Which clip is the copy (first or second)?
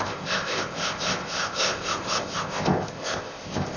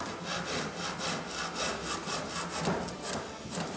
first